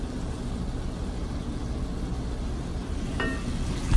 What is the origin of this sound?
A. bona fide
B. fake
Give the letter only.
A